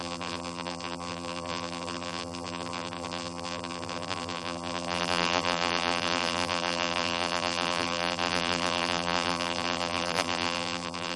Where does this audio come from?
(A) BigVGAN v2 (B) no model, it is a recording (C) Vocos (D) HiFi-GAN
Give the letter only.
A